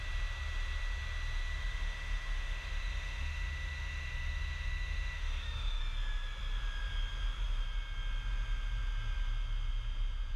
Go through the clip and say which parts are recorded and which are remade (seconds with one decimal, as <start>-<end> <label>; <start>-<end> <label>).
0.0-1.5 recorded; 1.5-5.8 remade; 5.8-10.4 recorded